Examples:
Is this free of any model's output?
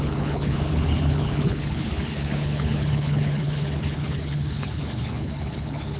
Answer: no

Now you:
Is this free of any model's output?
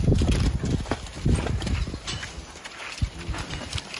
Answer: yes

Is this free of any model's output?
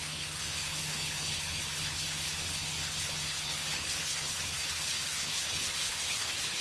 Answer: no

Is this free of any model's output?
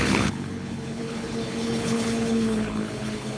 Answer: no